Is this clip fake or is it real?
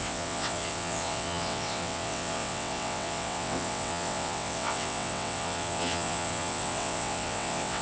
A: fake